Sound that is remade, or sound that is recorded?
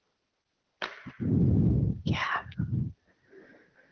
recorded